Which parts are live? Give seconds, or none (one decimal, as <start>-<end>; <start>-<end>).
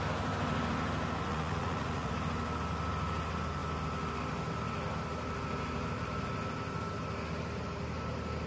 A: 0.0-1.3; 2.1-8.5